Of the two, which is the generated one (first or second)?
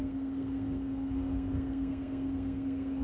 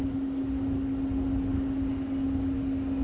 first